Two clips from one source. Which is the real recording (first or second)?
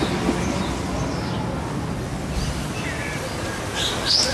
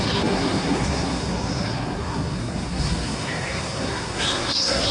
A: first